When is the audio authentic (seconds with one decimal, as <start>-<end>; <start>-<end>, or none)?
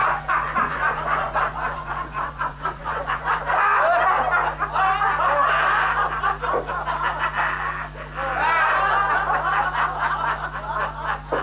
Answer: 3.4-11.4